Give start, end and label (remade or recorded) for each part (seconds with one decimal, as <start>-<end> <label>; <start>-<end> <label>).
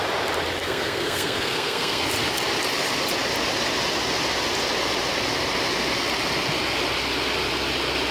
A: 0.0-0.6 recorded; 0.6-2.0 remade; 2.0-8.1 recorded